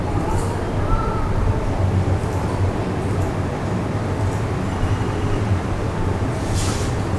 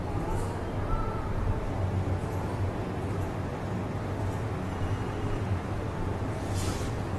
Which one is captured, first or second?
second